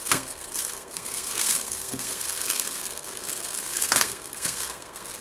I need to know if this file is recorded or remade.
remade